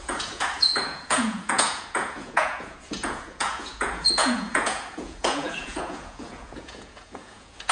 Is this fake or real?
fake